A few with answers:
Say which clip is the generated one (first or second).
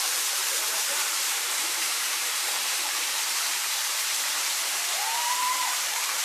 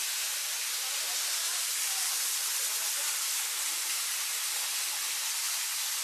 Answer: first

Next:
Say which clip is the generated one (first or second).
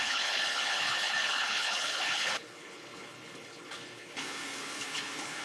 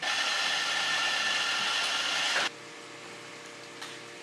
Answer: first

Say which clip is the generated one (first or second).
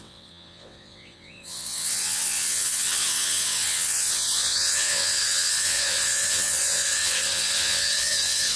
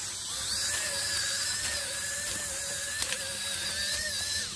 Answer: first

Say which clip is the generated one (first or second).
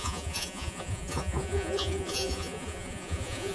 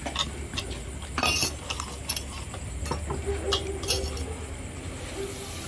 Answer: first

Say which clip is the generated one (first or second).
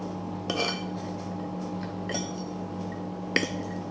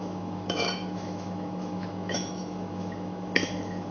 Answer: second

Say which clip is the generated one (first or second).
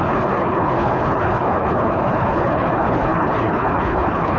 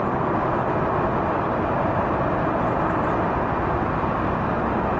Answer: first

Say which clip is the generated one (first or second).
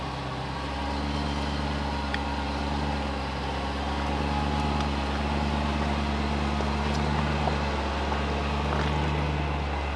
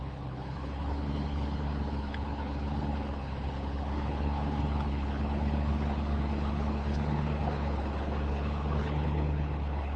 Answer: second